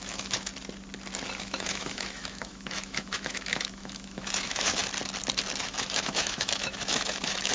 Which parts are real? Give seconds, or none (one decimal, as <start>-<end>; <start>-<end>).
0.5-1.4; 4.8-5.6